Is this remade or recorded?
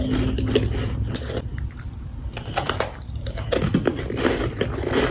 recorded